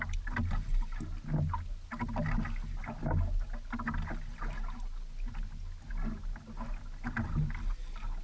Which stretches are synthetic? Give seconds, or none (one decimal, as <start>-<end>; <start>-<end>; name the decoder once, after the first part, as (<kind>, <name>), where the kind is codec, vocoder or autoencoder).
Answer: none